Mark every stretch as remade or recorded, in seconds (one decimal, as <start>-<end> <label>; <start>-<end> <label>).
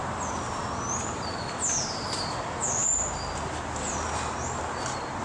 0.0-5.2 recorded